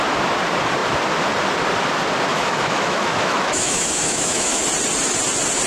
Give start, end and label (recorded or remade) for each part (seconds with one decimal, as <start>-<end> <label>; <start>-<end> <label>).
0.0-2.3 recorded; 2.3-4.6 remade; 4.6-5.7 recorded